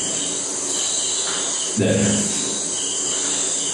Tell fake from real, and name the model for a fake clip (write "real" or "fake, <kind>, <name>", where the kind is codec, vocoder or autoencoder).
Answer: real